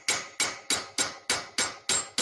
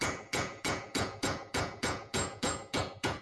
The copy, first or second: second